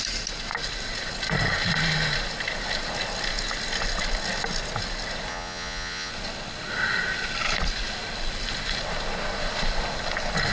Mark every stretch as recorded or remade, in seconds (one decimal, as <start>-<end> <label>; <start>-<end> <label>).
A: 0.0-5.3 recorded; 5.3-6.1 remade; 6.1-10.5 recorded